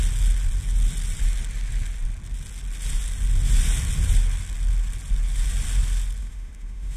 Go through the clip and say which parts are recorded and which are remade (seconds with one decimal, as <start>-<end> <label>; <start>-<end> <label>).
0.0-6.2 recorded; 6.2-7.0 remade